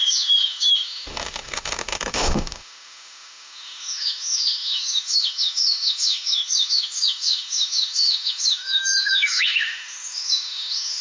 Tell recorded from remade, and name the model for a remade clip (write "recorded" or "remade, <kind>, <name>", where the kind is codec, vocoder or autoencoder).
remade, autoencoder, DAC-VAE